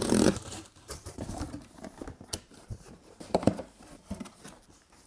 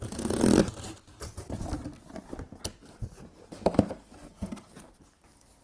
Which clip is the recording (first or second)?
second